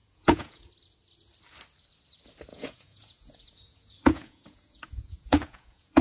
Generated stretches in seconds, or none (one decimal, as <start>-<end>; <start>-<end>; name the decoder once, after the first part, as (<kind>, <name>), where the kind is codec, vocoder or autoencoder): 0.0-0.7 (vocoder, Vocos); 2.5-6.0